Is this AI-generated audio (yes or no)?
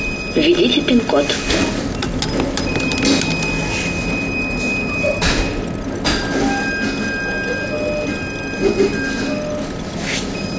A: no